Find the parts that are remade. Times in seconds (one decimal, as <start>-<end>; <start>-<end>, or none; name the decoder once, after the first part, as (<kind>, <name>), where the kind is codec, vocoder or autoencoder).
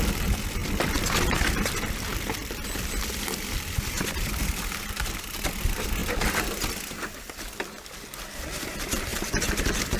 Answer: 0.0-0.6 (vocoder, BigVGAN v2); 1.2-6.0; 6.7-10.0